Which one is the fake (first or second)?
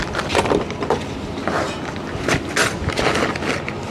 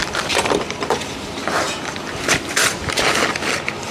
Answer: second